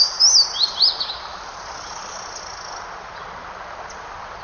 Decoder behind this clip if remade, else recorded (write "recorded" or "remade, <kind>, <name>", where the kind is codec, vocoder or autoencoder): recorded